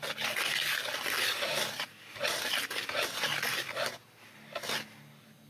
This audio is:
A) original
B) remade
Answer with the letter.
A